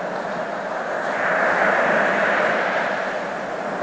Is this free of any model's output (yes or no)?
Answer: yes